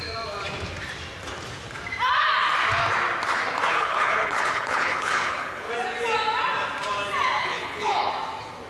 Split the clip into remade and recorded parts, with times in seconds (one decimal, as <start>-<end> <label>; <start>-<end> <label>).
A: 0.0-3.7 recorded; 3.7-5.7 remade; 5.7-7.4 recorded; 7.4-8.1 remade; 8.1-8.7 recorded